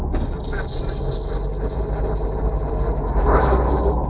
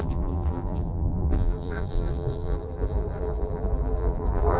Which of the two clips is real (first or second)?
first